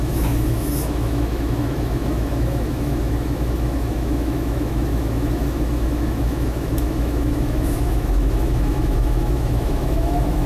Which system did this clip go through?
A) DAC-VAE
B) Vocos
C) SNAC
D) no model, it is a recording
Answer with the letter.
A